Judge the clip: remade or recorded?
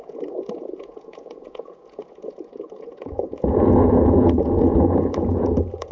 remade